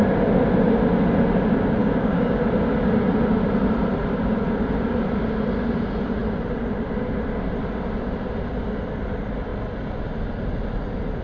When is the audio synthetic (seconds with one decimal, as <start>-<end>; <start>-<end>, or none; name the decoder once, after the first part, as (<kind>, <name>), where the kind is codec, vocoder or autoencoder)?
1.8-2.4 (codec, DAC)